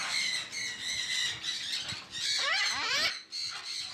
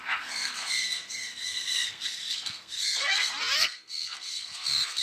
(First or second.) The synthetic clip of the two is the second